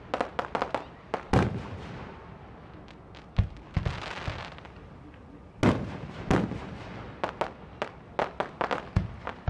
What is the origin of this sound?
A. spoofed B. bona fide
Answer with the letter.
B